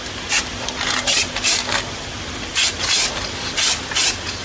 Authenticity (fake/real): real